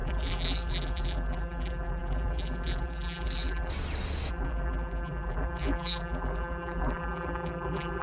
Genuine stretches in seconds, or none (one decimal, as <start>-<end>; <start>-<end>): 3.7-4.3